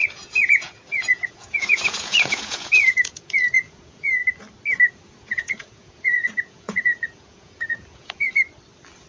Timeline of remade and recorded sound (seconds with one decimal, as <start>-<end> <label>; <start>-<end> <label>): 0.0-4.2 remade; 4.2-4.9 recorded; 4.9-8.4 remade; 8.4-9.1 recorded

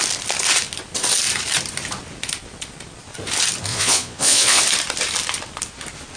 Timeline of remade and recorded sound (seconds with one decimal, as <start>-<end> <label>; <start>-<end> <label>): 0.0-3.7 recorded; 3.7-4.6 remade; 4.6-6.2 recorded

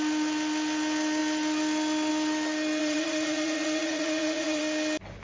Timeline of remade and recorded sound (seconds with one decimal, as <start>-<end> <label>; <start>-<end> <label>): 0.0-2.8 recorded; 2.8-4.6 remade; 4.6-5.2 recorded

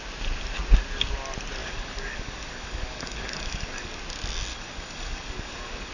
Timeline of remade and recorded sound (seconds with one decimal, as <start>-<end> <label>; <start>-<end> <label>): 0.0-1.6 recorded; 1.6-4.0 remade; 4.0-4.5 recorded; 4.5-5.9 remade

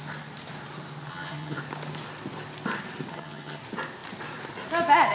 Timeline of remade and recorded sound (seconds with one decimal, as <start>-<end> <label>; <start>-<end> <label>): 0.0-1.1 recorded; 1.1-1.6 remade; 1.6-3.1 recorded; 3.1-3.6 remade; 3.6-5.1 recorded